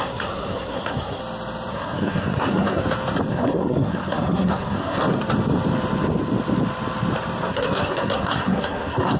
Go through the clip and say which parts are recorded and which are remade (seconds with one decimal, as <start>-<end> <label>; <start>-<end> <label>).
0.0-1.2 remade; 1.2-1.7 recorded; 1.7-2.8 remade; 2.8-3.3 recorded; 3.3-5.0 remade; 5.0-7.5 recorded; 7.5-9.2 remade